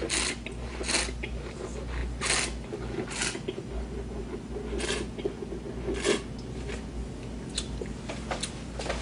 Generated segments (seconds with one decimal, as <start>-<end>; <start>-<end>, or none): none